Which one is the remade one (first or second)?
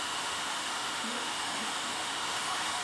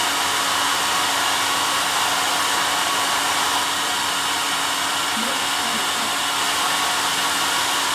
first